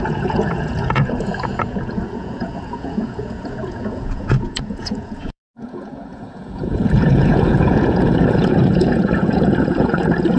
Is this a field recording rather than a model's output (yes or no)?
no